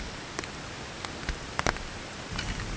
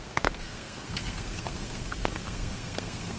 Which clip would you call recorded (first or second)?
first